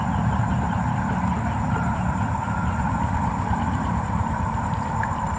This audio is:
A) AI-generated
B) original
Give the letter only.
A